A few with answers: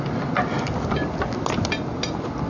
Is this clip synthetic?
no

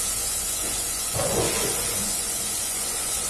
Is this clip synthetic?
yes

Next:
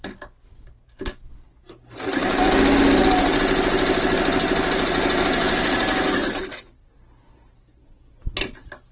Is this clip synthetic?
no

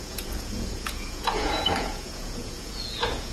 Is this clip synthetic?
yes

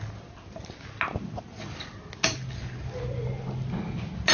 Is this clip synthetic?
no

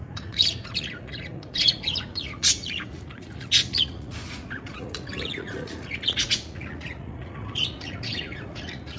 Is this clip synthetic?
yes